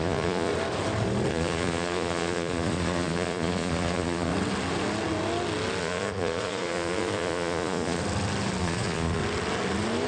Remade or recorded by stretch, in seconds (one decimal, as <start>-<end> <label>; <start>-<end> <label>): 0.0-0.5 remade; 0.5-1.3 recorded; 1.3-4.3 remade; 4.3-5.8 recorded; 5.8-8.0 remade; 8.0-8.6 recorded; 8.6-9.2 remade; 9.2-10.1 recorded